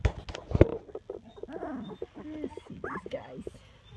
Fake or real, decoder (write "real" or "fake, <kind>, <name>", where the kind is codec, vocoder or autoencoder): real